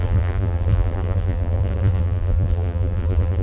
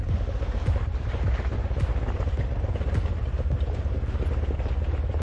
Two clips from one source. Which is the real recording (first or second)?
second